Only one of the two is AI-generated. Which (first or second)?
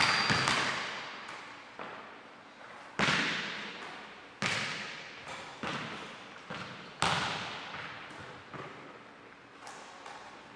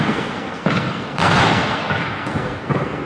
second